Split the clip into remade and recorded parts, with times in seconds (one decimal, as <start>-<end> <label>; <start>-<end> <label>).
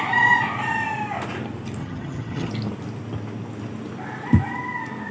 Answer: 0.0-1.8 recorded; 1.8-2.5 remade; 2.5-5.1 recorded